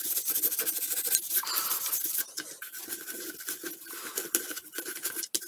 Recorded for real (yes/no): yes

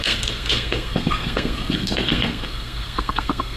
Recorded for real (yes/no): no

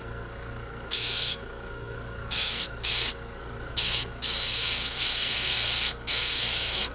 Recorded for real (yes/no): no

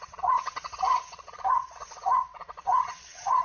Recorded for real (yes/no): no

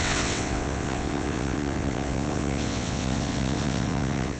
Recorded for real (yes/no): no